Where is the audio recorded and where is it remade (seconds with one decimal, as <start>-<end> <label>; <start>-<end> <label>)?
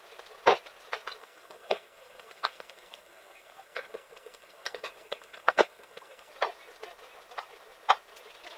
0.0-1.2 recorded; 1.2-6.3 remade; 6.3-8.6 recorded